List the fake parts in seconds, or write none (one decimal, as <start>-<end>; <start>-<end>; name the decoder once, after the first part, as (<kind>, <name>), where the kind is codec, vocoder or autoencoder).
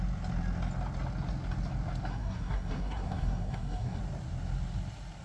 2.1-4.0 (codec, SNAC)